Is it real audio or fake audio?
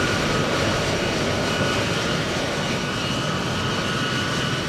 real